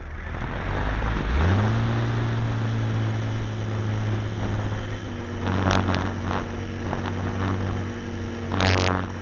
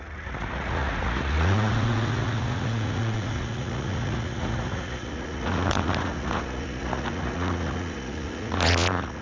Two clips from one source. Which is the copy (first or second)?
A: second